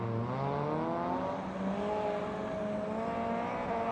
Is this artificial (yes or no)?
no